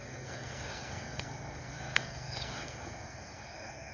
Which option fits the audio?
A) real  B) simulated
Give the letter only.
B